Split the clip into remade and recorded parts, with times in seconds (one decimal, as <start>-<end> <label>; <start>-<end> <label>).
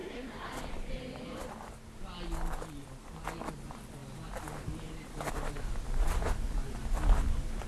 0.0-0.5 remade; 0.5-7.7 recorded